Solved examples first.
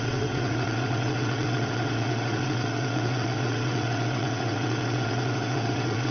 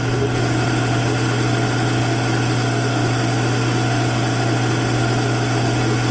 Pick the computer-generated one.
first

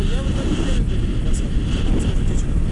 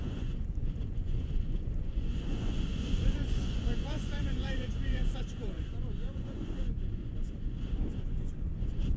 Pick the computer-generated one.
second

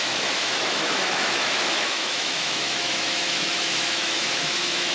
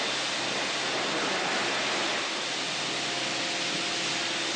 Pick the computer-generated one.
first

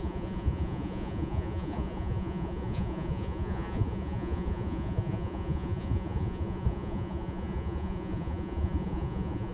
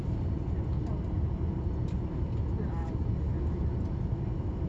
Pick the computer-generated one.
first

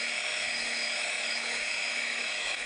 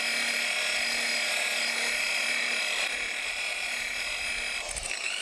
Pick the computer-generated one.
first